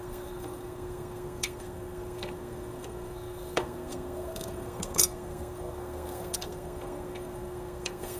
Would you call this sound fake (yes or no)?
yes